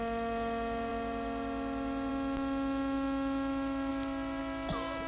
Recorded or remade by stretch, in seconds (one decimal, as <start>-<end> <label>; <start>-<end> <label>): 0.0-5.1 recorded